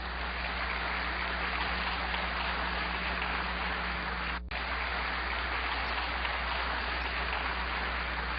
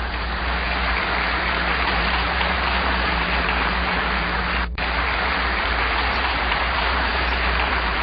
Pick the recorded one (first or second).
first